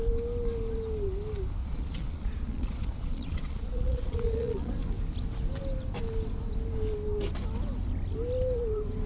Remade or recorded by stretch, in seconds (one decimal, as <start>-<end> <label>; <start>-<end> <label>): 0.0-1.6 recorded; 1.6-4.7 remade; 4.7-9.1 recorded